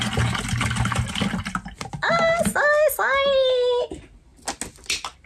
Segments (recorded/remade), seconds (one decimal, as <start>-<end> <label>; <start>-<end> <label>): 0.0-5.3 recorded